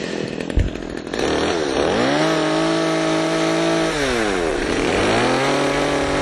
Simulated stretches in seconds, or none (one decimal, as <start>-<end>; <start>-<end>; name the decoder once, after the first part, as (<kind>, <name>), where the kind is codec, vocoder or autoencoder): 4.5-5.0 (vocoder, Vocos)